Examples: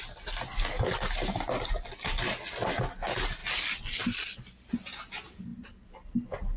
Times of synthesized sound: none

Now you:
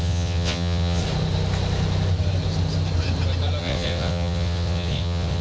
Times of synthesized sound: 0.0-1.0 (vocoder, WaveNeXt); 3.6-5.4

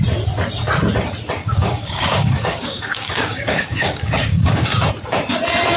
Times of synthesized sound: 1.4-4.9 (codec, DAC)

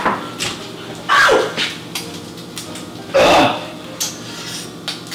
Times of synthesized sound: none

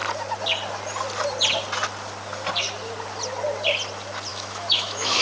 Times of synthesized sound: 4.3-5.2 (autoencoder, DAC-VAE)